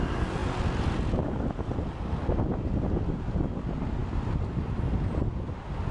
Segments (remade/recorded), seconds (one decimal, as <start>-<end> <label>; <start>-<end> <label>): 0.0-5.9 recorded